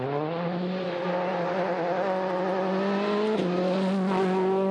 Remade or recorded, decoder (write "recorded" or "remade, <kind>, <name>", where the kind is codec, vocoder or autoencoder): recorded